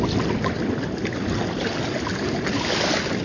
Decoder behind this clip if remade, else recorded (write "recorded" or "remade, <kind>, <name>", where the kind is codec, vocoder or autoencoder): recorded